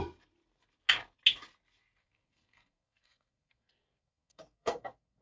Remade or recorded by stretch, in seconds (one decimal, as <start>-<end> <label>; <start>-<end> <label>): 0.0-2.0 recorded; 2.0-5.2 remade